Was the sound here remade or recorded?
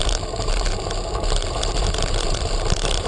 remade